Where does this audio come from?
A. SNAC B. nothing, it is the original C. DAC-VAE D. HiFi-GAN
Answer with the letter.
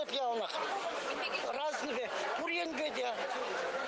B